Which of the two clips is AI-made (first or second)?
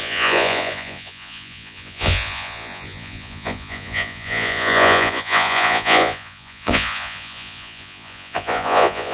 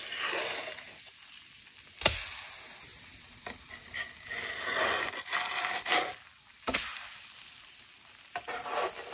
first